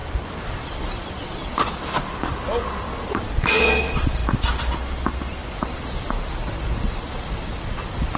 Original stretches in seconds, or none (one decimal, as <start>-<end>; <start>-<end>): 0.0-0.6; 2.0-2.6; 4.2-5.5